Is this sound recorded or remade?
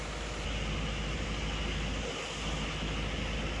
recorded